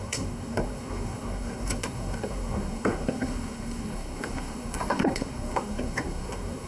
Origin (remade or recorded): remade